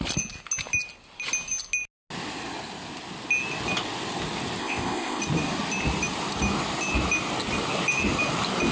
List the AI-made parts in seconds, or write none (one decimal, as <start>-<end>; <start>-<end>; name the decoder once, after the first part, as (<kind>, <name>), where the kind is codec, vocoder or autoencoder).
4.6-5.2 (codec, ZipCodec)